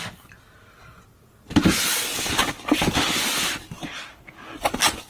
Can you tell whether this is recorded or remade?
recorded